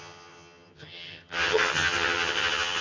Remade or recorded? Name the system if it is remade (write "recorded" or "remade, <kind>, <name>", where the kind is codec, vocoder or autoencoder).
remade, vocoder, HiFi-GAN